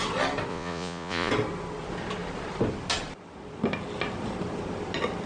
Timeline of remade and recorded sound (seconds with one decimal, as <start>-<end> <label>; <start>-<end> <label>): 0.0-0.5 recorded; 0.5-1.3 remade; 1.3-5.3 recorded